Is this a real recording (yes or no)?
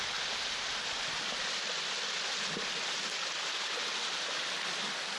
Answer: yes